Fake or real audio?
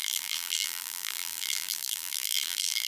fake